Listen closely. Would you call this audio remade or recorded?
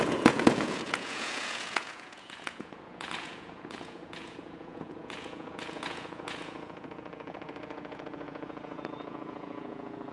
remade